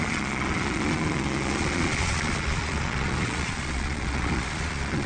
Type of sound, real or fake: fake